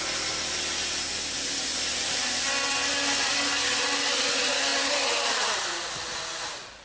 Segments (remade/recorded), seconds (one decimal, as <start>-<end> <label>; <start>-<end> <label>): 0.0-6.8 recorded